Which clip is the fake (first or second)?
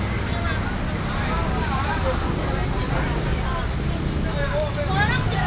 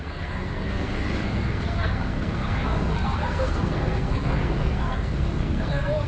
second